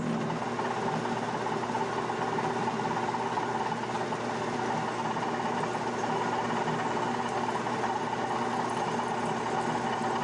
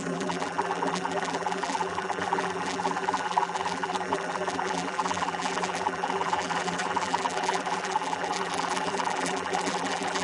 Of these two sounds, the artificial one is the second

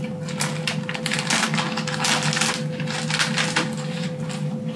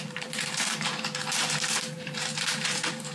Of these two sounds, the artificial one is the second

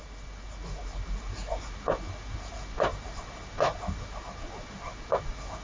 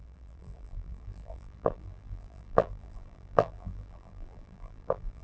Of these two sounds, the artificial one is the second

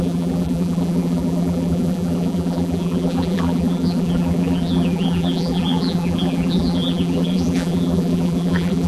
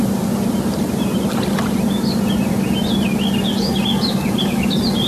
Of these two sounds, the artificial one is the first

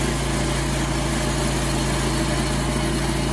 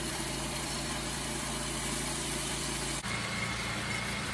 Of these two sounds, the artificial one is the second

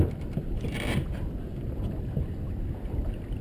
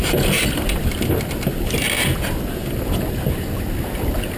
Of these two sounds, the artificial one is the first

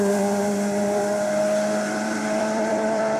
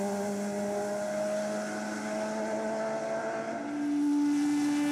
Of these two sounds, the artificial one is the first